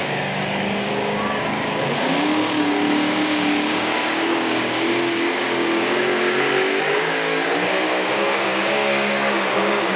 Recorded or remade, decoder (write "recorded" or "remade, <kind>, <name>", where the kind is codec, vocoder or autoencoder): remade, codec, DAC